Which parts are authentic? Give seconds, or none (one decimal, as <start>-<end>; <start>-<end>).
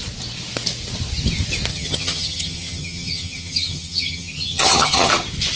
0.0-1.7; 5.1-5.6